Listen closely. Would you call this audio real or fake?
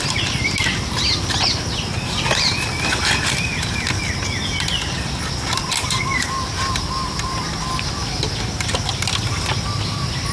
real